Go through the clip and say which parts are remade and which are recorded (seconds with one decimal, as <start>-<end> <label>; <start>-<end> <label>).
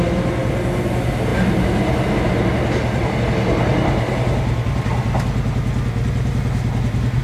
0.0-7.2 recorded